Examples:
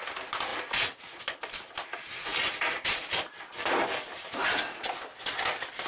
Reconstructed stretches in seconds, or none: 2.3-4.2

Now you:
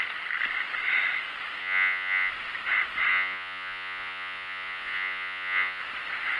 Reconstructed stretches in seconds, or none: 1.6-2.3; 3.1-5.8

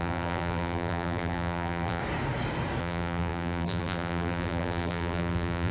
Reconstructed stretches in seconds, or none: 0.0-2.0; 2.8-5.7

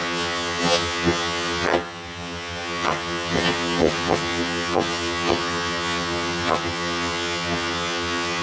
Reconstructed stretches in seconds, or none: 0.0-8.4

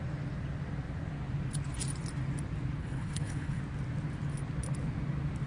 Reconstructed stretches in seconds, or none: 2.8-3.6